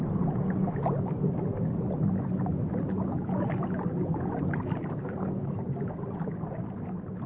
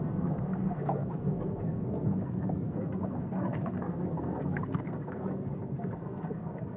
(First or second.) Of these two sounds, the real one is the first